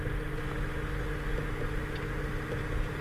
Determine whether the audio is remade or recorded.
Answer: recorded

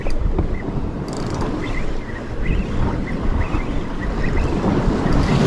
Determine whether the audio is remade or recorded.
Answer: recorded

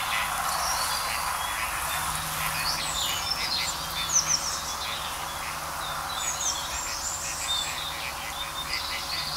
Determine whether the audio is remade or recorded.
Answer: recorded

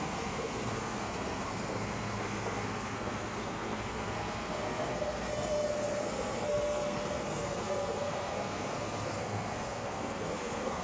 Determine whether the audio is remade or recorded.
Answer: remade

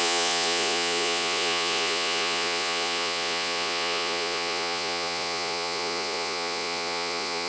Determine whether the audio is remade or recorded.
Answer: remade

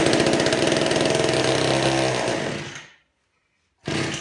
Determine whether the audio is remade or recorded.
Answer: recorded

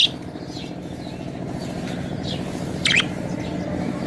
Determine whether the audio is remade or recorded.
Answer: recorded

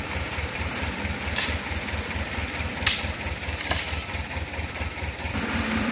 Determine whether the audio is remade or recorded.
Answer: remade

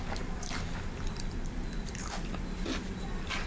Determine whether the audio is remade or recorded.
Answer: remade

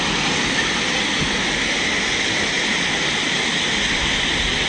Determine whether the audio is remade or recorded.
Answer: recorded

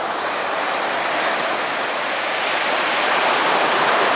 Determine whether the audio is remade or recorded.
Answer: recorded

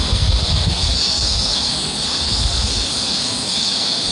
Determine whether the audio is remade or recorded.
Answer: remade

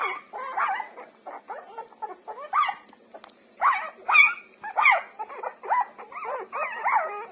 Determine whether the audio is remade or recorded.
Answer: recorded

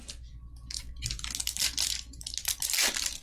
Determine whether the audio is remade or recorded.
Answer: recorded